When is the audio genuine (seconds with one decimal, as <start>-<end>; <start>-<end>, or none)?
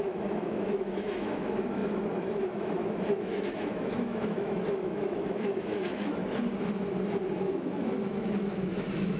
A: 6.2-7.4